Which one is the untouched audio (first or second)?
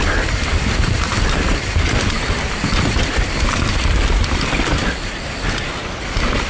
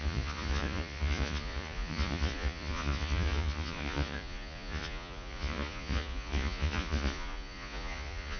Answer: first